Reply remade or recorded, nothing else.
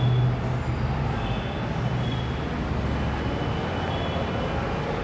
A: recorded